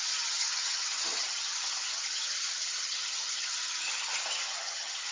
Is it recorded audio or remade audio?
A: remade